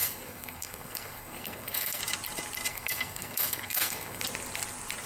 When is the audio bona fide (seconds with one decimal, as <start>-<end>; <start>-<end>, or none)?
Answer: 2.0-2.7; 4.2-5.1